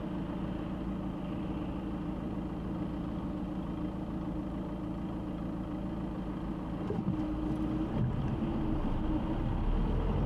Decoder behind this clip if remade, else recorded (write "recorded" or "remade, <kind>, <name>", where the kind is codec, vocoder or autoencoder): recorded